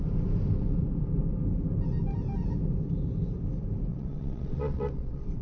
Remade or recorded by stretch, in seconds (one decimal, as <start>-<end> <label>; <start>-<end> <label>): 0.0-3.9 recorded; 3.9-5.4 remade